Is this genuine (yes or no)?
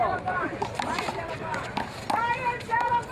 yes